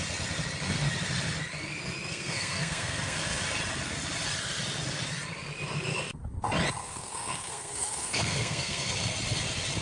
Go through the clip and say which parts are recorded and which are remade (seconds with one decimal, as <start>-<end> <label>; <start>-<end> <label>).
0.0-2.1 recorded; 2.1-3.4 remade; 3.4-6.8 recorded; 6.8-8.9 remade; 8.9-9.8 recorded